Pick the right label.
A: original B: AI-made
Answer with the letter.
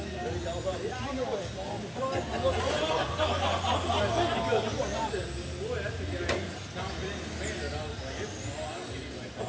A